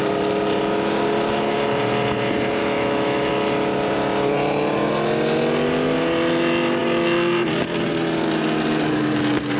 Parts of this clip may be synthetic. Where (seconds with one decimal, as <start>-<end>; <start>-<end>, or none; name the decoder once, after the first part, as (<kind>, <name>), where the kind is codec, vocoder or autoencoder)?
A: 2.6-3.3 (autoencoder, DAC-VAE)